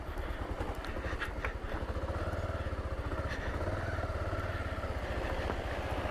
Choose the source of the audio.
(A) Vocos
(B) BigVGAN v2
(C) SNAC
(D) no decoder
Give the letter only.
D